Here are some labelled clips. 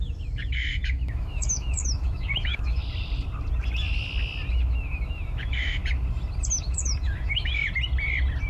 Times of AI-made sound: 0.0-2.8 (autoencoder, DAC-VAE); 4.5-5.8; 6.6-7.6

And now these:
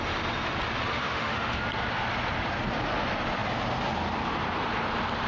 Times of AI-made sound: 0.9-1.6 (autoencoder, DAC-VAE)

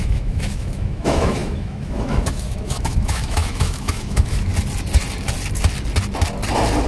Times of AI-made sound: 0.0-4.5 (autoencoder, DAC-VAE)

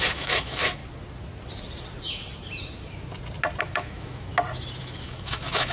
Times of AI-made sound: 0.0-0.8 (autoencoder, DAC-VAE); 3.6-4.3; 4.8-5.7

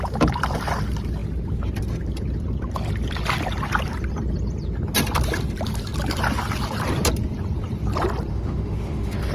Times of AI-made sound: 8.3-9.3 (autoencoder, DAC-VAE)

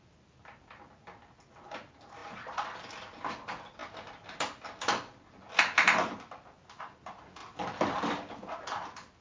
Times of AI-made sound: none

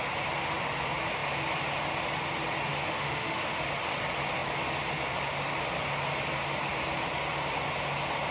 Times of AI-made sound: 2.7-3.6 (autoencoder, DAC-VAE)